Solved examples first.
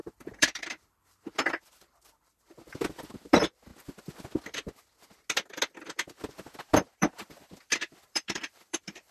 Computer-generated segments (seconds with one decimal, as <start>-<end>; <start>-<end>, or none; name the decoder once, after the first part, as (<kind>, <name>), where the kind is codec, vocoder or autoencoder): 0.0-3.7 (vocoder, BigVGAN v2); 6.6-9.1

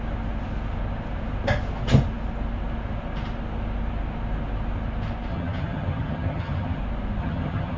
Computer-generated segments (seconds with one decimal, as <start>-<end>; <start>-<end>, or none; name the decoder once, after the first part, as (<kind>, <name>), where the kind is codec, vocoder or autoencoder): 5.3-6.8 (vocoder, HiFi-GAN); 7.2-7.8

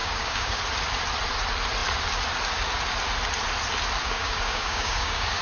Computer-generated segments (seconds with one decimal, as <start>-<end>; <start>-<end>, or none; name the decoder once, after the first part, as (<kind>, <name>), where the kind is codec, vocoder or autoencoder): 0.0-0.6 (codec, DAC); 4.0-5.4

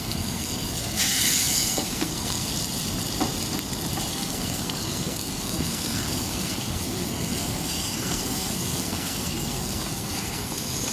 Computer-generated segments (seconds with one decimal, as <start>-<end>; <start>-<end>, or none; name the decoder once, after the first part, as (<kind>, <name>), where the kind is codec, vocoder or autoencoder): 0.0-2.5 (codec, SNAC); 4.1-10.9

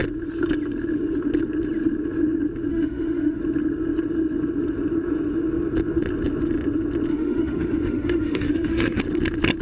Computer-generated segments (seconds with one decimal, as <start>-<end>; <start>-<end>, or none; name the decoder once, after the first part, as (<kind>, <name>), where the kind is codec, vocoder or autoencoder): 2.7-3.4 (autoencoder, DAC-VAE); 7.1-9.0

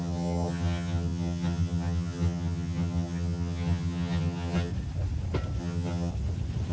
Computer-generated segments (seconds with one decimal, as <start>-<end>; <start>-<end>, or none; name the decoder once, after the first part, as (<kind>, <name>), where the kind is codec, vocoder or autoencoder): 0.0-4.7 (vocoder, HiFi-GAN); 5.6-6.1

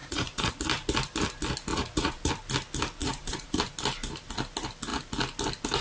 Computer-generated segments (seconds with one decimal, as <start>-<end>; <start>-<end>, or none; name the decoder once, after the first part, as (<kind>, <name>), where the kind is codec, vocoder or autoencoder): 0.0-0.5 (vocoder, Vocos); 1.7-2.3; 3.0-3.6

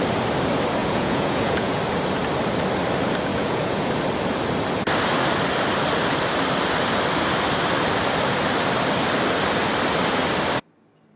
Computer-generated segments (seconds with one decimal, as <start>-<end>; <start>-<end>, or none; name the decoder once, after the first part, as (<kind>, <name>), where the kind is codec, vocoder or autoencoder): 0.8-1.8 (vocoder, Vocos); 3.3-3.9